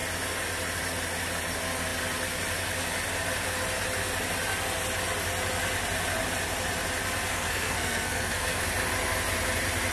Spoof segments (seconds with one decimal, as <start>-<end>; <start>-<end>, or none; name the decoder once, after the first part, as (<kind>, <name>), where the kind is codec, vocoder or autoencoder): 7.3-8.6 (codec, SNAC)